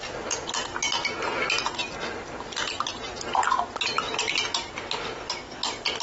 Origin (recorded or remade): recorded